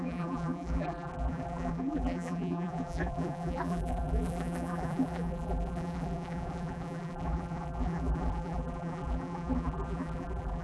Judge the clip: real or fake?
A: fake